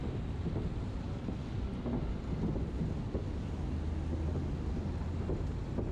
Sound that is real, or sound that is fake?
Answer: real